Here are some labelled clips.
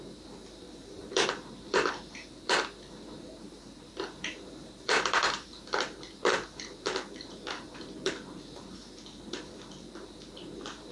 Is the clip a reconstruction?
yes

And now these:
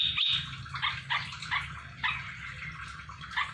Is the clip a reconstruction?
no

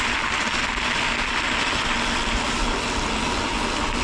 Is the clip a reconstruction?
no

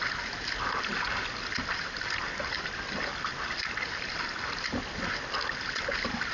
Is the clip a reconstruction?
no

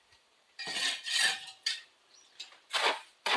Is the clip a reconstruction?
yes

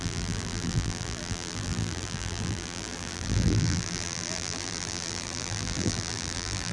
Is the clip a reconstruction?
yes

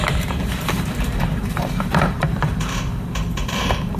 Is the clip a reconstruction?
yes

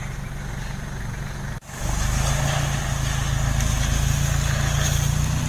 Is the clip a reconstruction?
no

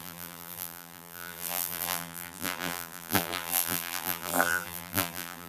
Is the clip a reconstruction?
yes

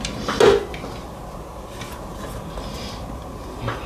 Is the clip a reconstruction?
no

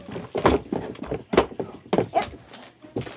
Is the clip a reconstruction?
no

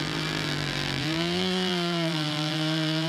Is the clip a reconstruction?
yes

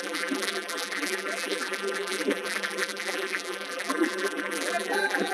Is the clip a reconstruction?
yes